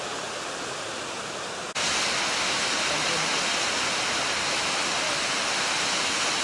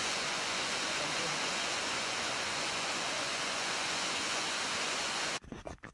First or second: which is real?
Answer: first